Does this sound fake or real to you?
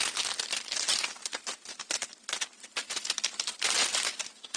real